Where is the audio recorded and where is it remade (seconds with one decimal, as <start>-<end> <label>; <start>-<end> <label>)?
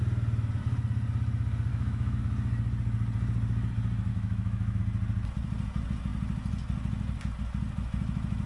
0.0-1.7 recorded; 1.7-2.2 remade; 2.2-4.1 recorded; 4.1-4.8 remade; 4.8-8.5 recorded